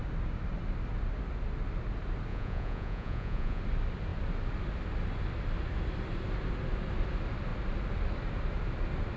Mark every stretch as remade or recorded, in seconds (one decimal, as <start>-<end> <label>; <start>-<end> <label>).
0.0-2.3 recorded; 2.3-3.6 remade; 3.6-9.2 recorded